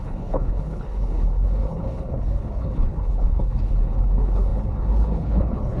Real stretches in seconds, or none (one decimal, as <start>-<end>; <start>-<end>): none